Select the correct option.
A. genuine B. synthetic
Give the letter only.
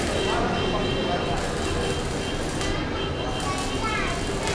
A